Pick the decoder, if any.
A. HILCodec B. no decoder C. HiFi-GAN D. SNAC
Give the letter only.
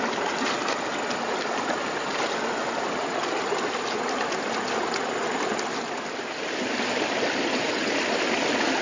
B